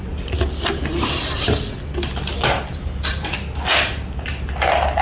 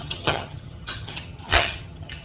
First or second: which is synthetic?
second